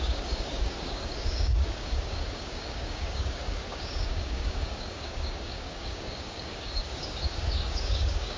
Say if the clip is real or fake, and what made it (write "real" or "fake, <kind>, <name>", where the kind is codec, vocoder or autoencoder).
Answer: fake, codec, DAC